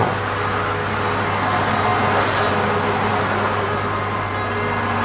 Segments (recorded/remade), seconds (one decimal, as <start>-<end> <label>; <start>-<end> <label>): 0.0-5.0 recorded